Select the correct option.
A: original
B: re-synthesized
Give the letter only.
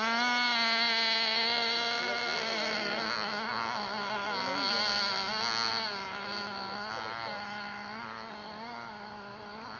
A